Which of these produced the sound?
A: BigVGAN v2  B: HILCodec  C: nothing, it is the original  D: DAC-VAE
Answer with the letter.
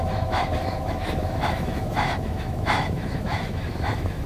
D